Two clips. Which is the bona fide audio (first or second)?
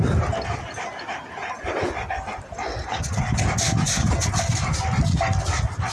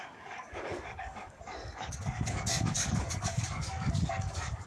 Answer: first